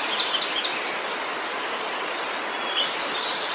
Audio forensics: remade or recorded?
recorded